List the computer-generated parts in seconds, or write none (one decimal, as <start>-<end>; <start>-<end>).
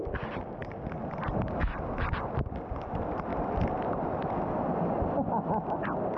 none